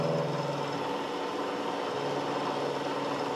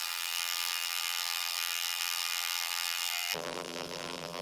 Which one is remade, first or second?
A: second